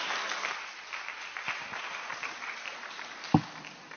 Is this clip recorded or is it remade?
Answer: remade